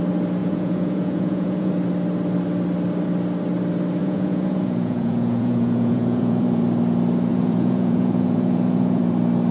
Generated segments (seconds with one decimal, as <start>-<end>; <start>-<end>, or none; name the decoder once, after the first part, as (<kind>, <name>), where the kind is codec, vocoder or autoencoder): 0.4-1.7 (vocoder, Vocos); 4.0-6.6; 7.3-9.0